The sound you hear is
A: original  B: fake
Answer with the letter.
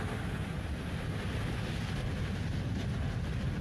A